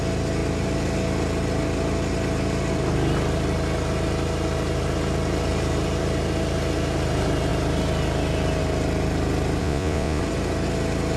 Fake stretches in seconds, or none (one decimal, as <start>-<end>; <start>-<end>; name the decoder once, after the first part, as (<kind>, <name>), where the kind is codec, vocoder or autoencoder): 9.6-10.2 (vocoder, Vocos)